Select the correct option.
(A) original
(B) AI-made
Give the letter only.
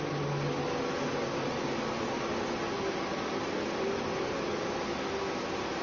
A